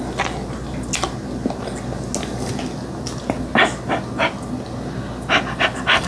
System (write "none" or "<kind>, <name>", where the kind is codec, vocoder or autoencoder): none